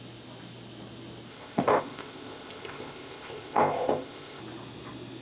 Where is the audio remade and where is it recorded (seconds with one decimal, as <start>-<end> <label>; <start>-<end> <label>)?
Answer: 0.0-1.3 recorded; 1.3-4.4 remade; 4.4-5.2 recorded